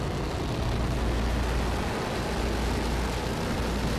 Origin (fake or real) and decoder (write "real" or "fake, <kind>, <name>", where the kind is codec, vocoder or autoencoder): real